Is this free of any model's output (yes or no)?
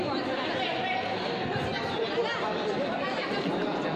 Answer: yes